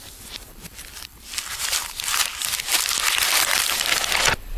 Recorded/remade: remade